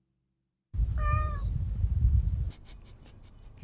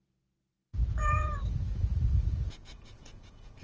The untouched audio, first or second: first